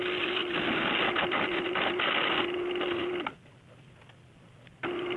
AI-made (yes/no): no